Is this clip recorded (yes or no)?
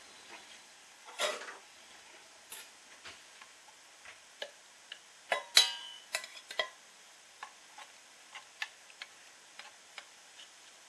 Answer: yes